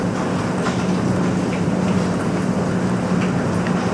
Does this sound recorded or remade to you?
recorded